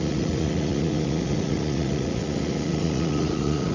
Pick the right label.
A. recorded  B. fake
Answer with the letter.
B